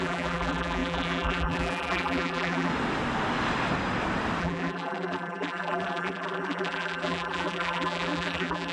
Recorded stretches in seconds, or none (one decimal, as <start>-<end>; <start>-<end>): 2.7-4.4